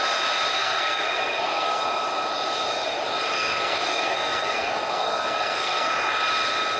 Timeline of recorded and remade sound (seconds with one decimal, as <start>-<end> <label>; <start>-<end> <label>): 0.0-0.5 recorded; 0.5-1.8 remade; 1.8-3.3 recorded; 3.3-5.9 remade; 5.9-6.8 recorded